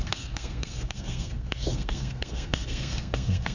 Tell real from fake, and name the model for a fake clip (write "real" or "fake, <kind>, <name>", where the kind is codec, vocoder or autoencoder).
fake, codec, SNAC